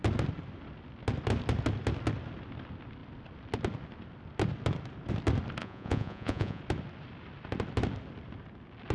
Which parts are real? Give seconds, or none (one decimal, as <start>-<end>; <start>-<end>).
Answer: 0.0-5.6; 6.6-8.9